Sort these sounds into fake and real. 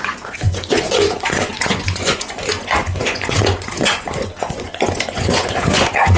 fake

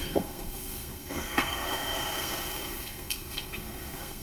fake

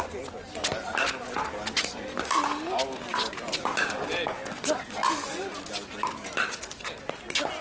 real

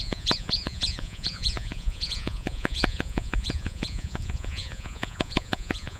fake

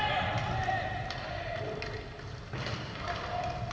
real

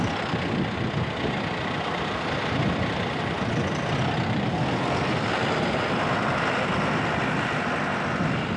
real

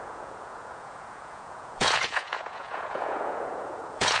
fake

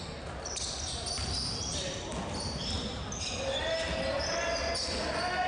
real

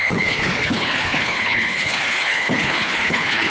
fake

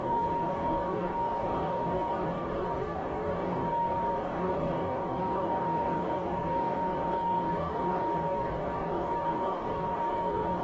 fake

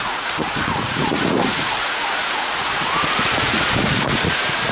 fake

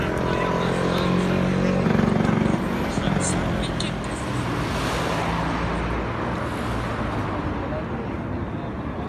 real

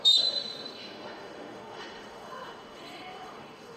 fake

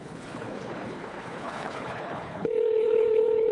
fake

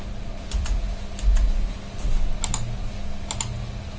real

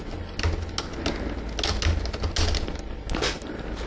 real